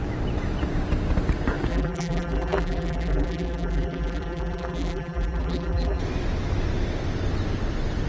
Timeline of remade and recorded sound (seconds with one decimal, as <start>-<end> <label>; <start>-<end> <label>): 0.0-1.7 recorded; 1.7-6.0 remade; 6.0-8.1 recorded